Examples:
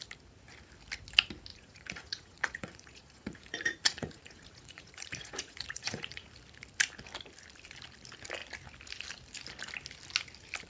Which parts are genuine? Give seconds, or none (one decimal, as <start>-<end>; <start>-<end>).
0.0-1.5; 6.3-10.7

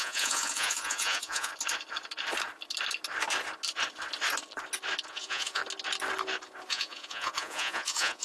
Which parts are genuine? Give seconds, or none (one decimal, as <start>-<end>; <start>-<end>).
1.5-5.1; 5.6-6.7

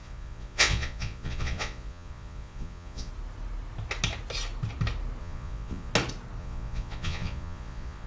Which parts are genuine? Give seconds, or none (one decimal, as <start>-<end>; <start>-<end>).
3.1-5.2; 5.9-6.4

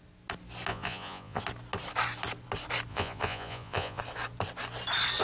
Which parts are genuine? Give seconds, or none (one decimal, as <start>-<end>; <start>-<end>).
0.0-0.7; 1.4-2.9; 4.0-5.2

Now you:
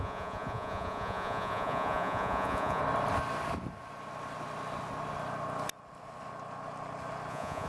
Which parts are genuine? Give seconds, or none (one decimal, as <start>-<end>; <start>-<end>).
2.8-7.3

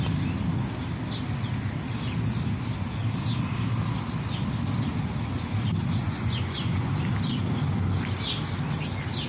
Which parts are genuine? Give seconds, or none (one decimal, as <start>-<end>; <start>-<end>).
0.0-6.0; 6.9-9.3

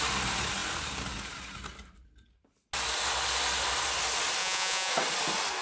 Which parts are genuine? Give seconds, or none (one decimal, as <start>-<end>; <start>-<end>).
0.0-4.4; 4.9-5.6